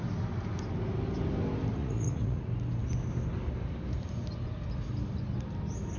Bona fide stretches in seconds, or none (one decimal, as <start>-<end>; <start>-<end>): 0.0-1.8; 2.4-6.0